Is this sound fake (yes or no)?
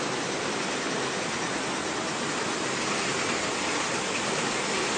no